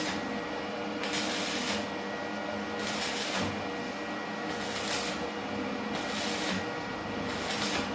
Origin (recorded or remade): recorded